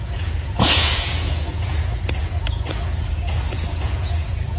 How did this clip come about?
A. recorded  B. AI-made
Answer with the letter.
B